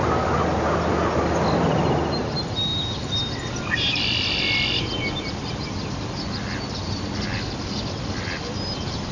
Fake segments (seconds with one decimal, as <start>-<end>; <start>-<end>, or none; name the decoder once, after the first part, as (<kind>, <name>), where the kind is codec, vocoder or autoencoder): none